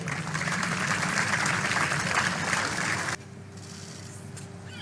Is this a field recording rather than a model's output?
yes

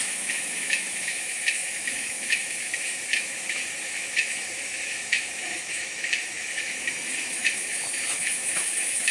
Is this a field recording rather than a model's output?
no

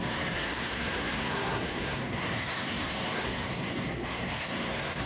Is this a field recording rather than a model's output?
no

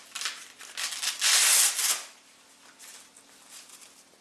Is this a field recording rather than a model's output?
yes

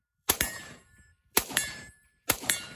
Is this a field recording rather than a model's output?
no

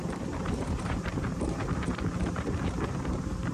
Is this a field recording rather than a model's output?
no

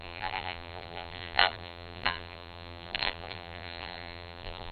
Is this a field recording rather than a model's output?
no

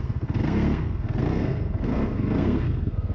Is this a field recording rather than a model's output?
no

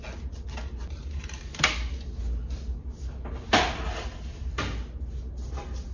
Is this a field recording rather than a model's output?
yes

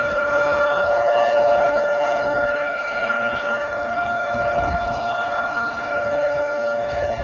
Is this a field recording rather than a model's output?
no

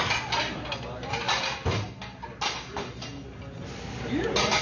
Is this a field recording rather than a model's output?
yes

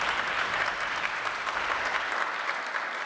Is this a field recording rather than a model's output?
yes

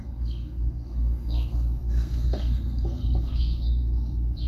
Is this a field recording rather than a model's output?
no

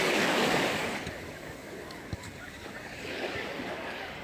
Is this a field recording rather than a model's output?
no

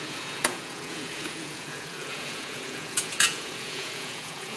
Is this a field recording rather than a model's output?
no